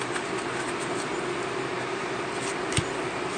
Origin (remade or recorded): recorded